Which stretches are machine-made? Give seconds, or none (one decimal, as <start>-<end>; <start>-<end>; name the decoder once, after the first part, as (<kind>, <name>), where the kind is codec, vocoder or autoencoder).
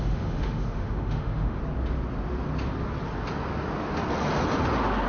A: 0.0-1.6 (autoencoder, DAC-VAE)